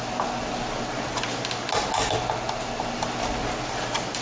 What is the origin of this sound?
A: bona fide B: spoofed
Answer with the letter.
A